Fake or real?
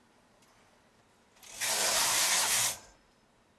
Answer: real